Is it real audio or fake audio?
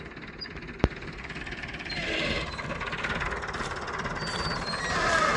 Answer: fake